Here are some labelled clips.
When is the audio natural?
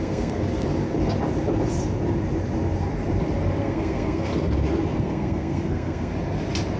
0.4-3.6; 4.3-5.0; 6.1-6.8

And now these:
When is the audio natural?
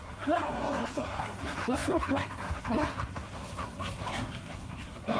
none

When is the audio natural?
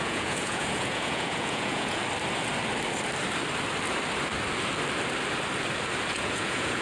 2.0-6.1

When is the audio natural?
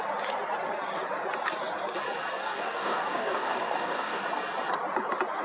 0.0-2.4; 4.2-5.4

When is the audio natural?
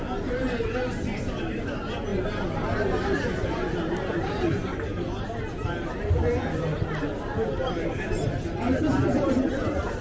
0.0-10.0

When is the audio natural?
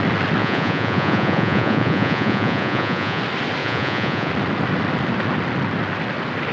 0.0-0.4; 3.2-3.6; 4.3-6.5